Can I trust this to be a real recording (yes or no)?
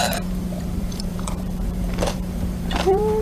no